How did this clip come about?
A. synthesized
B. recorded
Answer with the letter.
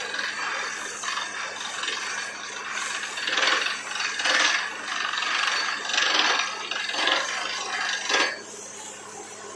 B